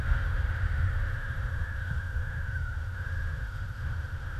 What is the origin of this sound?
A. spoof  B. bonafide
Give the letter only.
A